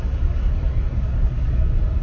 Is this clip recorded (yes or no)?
no